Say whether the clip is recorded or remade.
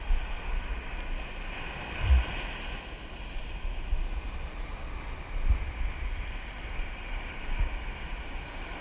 recorded